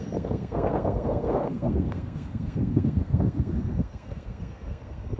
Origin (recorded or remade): remade